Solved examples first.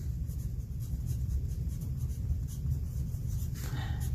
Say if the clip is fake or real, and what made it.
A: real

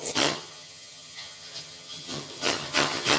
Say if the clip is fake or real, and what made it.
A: fake, vocoder, HiFi-GAN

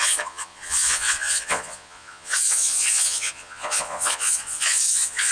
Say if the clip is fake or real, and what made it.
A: fake, vocoder, Vocos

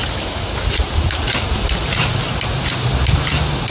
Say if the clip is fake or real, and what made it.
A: real